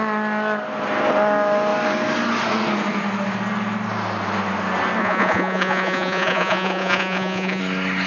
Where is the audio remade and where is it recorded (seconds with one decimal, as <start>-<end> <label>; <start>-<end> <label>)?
0.0-5.0 recorded; 5.0-7.6 remade; 7.6-8.1 recorded